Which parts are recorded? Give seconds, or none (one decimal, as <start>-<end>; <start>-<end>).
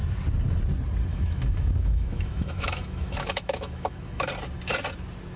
0.0-1.1; 4.3-5.4